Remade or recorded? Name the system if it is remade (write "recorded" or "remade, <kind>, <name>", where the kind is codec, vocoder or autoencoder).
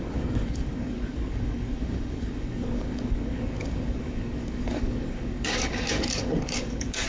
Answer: remade, codec, DAC